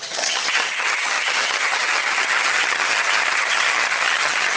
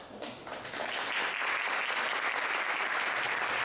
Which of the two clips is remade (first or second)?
first